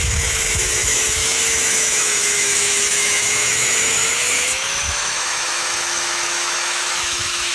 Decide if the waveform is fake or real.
fake